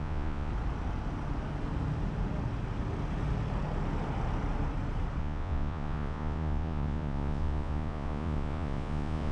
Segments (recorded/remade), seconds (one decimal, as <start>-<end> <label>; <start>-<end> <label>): 0.0-0.5 remade; 0.5-5.2 recorded; 5.2-9.3 remade